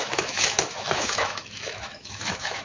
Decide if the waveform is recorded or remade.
remade